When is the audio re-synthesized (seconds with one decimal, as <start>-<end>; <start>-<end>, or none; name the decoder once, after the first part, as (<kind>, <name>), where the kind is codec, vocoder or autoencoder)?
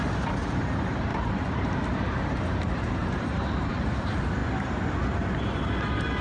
1.1-1.7 (vocoder, BigVGAN v2); 3.0-3.7; 4.4-5.7